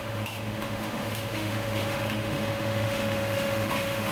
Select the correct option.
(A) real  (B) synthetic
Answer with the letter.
B